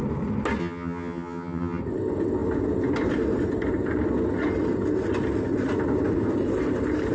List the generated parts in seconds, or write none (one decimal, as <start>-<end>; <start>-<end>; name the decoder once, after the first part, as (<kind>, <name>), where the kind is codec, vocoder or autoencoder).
0.6-1.8 (vocoder, HiFi-GAN)